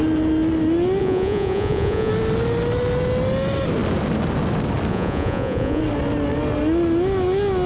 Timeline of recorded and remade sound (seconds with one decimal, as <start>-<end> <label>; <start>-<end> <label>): 0.0-1.0 recorded; 1.0-2.1 remade; 2.1-4.9 recorded; 4.9-5.8 remade; 5.8-7.7 recorded